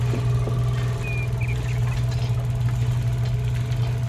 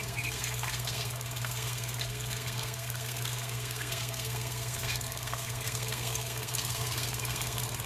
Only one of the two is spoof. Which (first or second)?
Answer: second